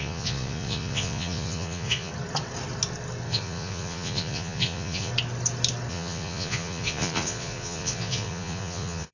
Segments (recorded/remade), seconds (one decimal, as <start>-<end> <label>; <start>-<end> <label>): 0.0-2.1 remade; 2.1-3.3 recorded; 3.3-5.1 remade; 5.1-5.9 recorded; 5.9-9.1 remade